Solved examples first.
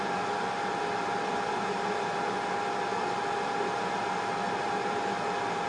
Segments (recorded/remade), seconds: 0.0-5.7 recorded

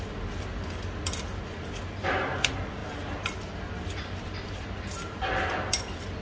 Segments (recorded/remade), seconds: 0.0-6.2 recorded

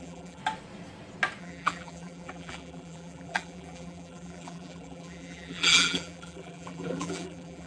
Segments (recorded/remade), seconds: 0.0-0.4 remade; 0.4-1.4 recorded; 1.4-7.7 remade

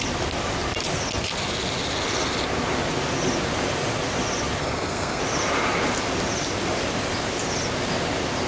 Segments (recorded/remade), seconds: 0.0-4.6 recorded; 4.6-5.2 remade; 5.2-8.5 recorded

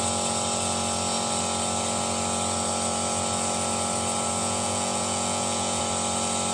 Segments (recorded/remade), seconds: 0.0-4.4 recorded; 4.4-5.8 remade; 5.8-6.5 recorded

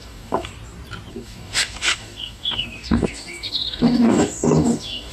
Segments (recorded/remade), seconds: 0.0-0.5 remade; 0.5-1.1 recorded; 1.1-5.1 remade

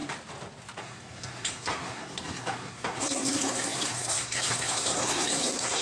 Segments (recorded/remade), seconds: 0.0-0.8 recorded; 0.8-5.8 remade